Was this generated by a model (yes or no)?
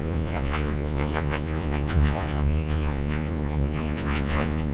yes